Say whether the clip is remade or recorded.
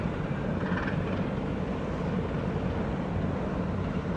recorded